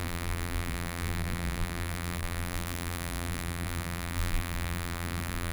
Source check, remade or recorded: remade